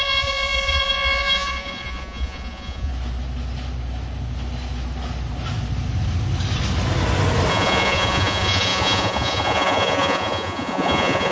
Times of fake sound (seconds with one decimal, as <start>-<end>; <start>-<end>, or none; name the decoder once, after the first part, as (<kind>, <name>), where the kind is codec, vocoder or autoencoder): 0.0-2.9 (vocoder, Vocos); 7.5-11.3